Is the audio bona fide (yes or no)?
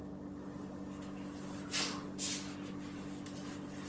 yes